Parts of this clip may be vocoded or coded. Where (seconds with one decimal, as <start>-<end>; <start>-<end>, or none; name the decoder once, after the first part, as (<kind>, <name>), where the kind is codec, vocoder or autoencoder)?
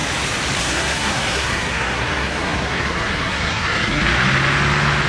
0.6-4.0 (codec, SNAC)